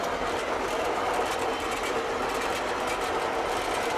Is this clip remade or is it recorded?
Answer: recorded